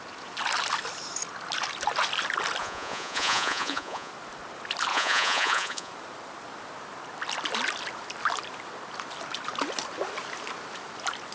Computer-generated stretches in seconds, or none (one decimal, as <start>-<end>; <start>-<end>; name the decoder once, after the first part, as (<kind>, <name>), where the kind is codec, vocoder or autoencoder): 2.6-4.1 (vocoder, Vocos); 4.9-5.9